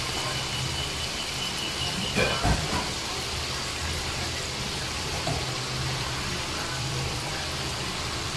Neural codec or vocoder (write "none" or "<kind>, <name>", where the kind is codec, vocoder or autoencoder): vocoder, BigVGAN v2